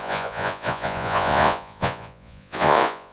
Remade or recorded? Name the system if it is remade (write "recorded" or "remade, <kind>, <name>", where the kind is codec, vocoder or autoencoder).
remade, vocoder, Vocos